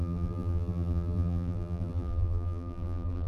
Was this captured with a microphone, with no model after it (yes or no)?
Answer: no